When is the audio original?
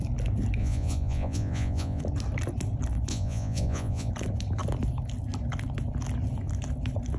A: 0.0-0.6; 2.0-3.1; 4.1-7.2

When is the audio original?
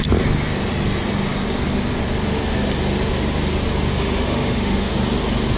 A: 0.0-3.9; 4.9-5.6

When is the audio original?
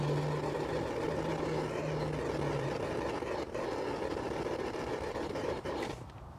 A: 0.0-0.5; 1.3-5.1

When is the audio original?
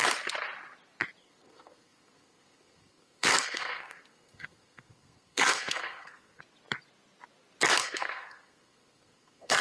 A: 0.0-1.2; 6.4-7.8